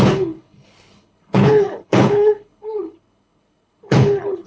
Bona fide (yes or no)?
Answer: no